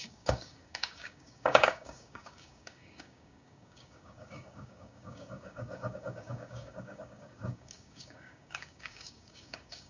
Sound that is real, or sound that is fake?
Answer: fake